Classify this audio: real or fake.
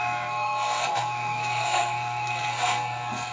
fake